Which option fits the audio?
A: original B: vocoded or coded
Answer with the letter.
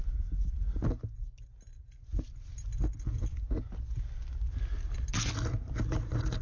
A